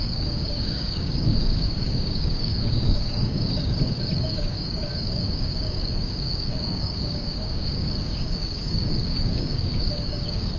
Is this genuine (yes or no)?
no